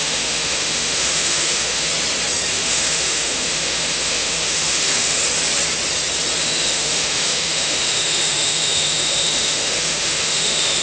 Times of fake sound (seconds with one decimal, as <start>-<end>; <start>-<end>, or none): 0.0-1.9; 2.5-5.2; 6.4-10.8